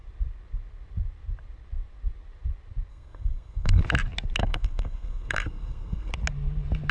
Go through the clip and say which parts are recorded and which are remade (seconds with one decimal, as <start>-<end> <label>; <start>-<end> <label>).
0.0-2.9 recorded; 2.9-3.8 remade; 3.8-4.4 recorded; 4.4-6.1 remade; 6.1-6.9 recorded